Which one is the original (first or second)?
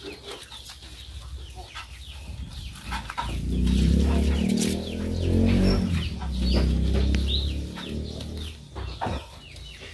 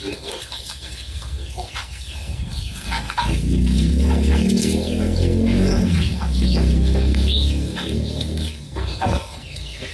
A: first